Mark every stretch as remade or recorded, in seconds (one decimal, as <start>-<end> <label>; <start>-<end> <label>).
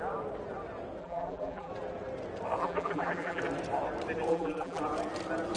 0.0-1.0 recorded; 1.0-1.7 remade; 1.7-2.6 recorded; 2.6-3.4 remade; 3.4-4.3 recorded; 4.3-4.8 remade; 4.8-5.6 recorded